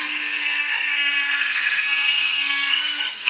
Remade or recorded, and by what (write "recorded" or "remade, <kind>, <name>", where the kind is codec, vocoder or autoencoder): remade, codec, SNAC